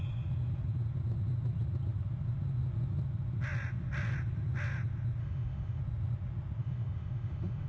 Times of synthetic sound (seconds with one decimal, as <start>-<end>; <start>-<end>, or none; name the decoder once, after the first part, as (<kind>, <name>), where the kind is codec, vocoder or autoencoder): 5.2-5.8 (autoencoder, DAC-VAE); 6.6-7.7